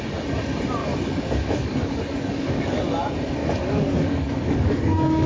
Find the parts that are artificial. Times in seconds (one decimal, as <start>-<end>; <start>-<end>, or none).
0.8-2.8; 3.4-5.3